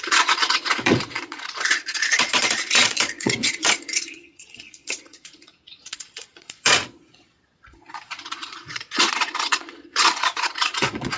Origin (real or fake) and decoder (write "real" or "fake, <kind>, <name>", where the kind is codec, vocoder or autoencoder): fake, vocoder, Vocos